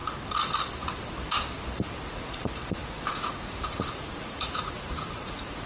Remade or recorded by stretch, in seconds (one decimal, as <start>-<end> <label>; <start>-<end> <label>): 0.0-2.1 recorded; 2.1-5.7 remade